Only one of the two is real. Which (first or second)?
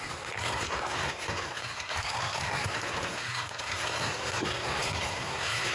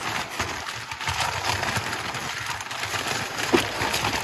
second